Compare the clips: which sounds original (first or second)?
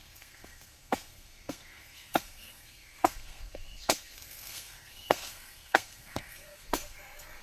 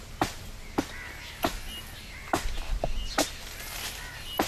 second